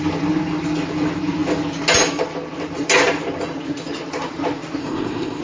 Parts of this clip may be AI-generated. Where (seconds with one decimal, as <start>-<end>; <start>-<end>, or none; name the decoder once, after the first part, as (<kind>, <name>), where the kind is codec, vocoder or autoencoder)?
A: 4.8-5.4 (codec, ZipCodec)